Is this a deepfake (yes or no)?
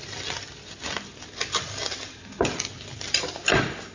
no